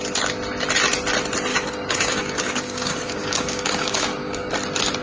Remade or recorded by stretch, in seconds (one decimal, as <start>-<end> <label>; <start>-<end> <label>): 0.0-1.5 recorded; 1.5-4.5 remade; 4.5-5.0 recorded